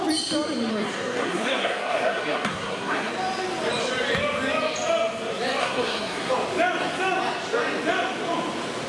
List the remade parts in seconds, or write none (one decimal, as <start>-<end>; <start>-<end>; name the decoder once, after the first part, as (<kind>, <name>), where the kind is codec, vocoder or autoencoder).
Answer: 0.7-3.1 (codec, SNAC); 5.6-6.3